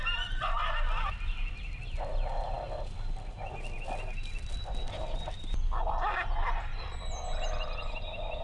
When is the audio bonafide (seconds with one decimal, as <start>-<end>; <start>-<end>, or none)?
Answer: 0.0-8.4